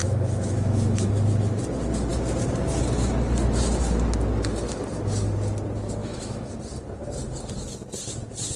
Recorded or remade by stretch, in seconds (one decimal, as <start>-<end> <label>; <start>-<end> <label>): 0.0-1.3 remade; 1.3-6.0 recorded; 6.0-6.5 remade; 6.5-8.6 recorded